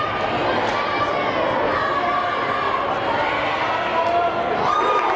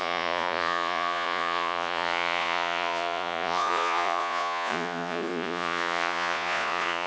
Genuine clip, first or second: first